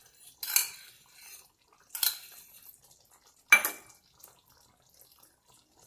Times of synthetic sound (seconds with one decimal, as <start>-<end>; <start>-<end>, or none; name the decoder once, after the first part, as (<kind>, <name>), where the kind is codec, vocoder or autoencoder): none